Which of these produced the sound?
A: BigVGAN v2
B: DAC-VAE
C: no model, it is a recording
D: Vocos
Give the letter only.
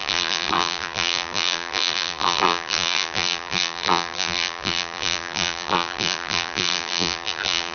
A